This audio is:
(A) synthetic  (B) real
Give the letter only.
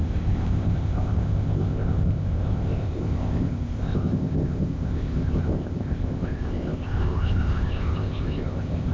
A